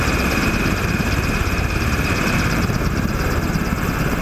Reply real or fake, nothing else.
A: fake